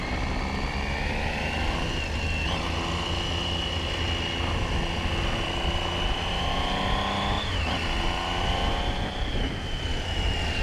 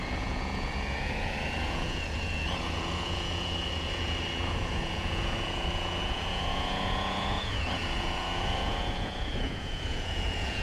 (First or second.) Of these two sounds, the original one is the first